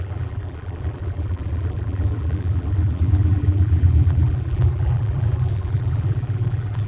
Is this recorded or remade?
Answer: remade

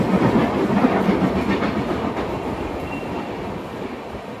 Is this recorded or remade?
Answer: recorded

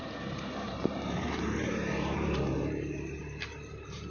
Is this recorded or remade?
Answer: remade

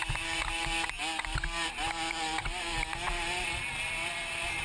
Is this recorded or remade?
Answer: recorded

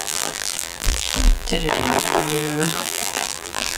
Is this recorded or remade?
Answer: remade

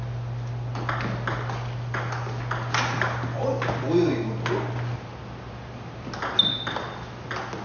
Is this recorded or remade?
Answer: recorded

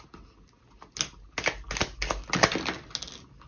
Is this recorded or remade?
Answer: recorded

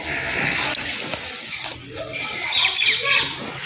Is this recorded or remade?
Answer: recorded